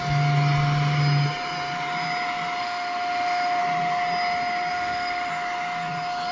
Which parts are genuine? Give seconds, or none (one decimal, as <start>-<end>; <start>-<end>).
0.0-2.6; 3.6-4.7; 5.3-6.3